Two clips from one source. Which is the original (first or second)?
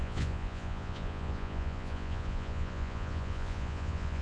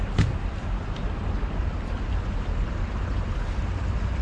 second